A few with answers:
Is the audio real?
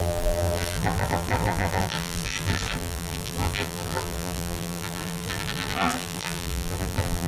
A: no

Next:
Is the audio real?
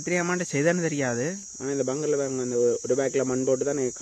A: yes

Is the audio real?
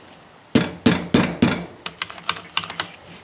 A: yes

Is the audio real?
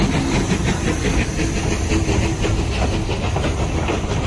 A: yes